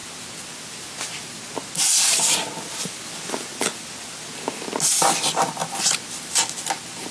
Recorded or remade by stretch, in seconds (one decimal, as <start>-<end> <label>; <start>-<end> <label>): 0.0-7.1 recorded